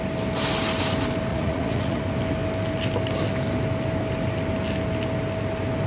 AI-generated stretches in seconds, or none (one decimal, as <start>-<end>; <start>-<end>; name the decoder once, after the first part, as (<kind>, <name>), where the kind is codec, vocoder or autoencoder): 1.3-2.0 (vocoder, Vocos)